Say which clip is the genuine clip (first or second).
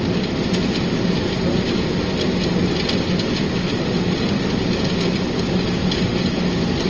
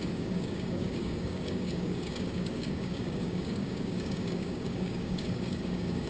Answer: first